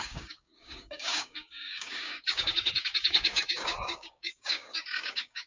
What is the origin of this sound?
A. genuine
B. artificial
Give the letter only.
B